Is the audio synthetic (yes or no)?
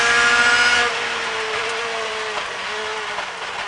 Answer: no